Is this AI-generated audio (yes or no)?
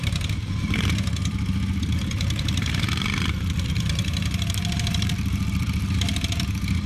yes